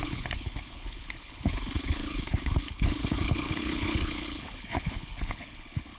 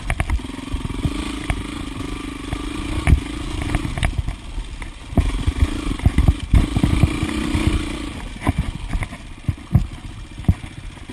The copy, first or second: first